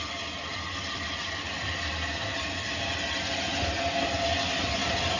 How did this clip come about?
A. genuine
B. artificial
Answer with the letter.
A